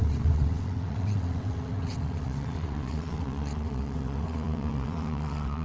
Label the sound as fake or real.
fake